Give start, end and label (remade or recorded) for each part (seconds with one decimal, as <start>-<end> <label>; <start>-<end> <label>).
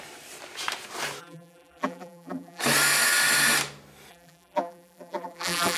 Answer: 0.0-1.2 recorded; 1.2-2.6 remade; 2.6-4.1 recorded; 4.1-5.8 remade